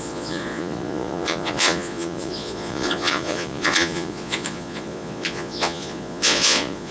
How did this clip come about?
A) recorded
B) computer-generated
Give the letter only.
B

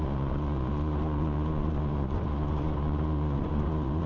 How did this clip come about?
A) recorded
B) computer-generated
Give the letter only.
B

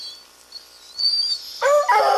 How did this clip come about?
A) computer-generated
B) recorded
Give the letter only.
B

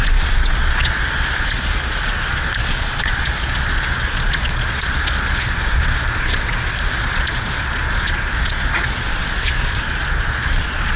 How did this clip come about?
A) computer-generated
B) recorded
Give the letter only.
A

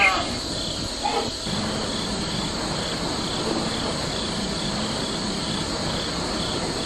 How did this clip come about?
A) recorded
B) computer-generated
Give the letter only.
A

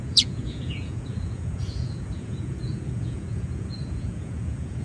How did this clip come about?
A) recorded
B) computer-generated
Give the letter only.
B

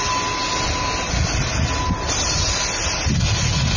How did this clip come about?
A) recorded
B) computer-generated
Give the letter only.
A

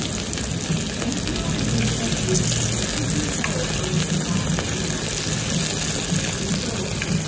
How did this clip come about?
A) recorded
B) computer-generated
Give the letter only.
A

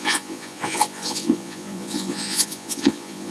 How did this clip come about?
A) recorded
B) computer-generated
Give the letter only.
B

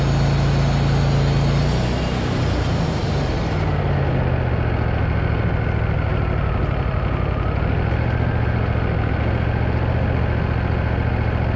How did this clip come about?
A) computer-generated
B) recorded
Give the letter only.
B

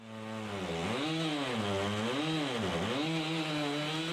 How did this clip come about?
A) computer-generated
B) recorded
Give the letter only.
B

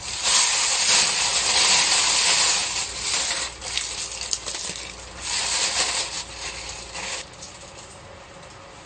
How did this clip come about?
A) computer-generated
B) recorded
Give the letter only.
B